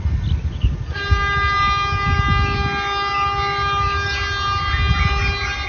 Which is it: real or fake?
real